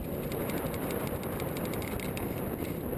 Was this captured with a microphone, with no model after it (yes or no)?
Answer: yes